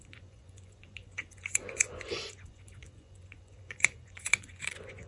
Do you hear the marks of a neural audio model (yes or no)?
yes